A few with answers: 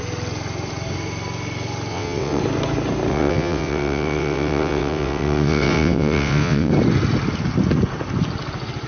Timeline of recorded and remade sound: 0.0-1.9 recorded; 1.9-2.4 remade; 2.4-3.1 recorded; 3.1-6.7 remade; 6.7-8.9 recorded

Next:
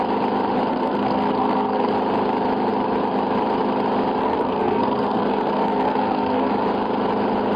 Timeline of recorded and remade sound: 0.0-0.7 recorded; 0.7-1.9 remade; 1.9-4.2 recorded; 4.2-6.5 remade; 6.5-7.6 recorded

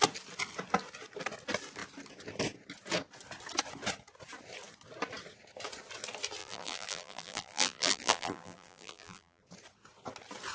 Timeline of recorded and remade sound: 0.0-6.4 recorded; 6.4-9.4 remade; 9.4-10.5 recorded

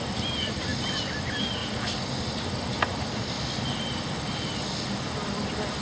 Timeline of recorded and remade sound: 0.0-5.8 recorded

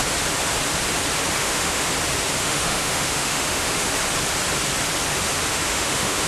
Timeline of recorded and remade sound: 0.0-1.4 recorded; 1.4-1.9 remade; 1.9-2.4 recorded; 2.4-3.9 remade; 3.9-5.5 recorded; 5.5-6.3 remade

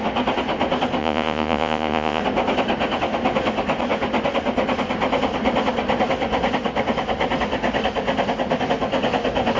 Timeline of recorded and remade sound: 0.0-1.0 recorded; 1.0-2.2 remade; 2.2-9.6 recorded

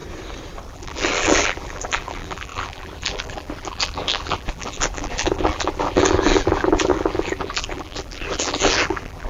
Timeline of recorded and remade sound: 0.0-0.7 recorded; 0.7-9.3 remade